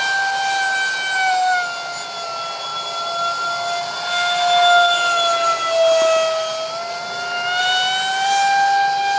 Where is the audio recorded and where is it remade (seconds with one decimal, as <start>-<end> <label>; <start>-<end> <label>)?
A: 0.0-9.2 recorded